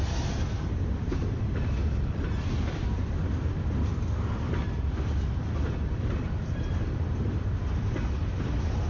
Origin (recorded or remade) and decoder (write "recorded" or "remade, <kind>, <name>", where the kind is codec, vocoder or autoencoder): remade, vocoder, BigVGAN v2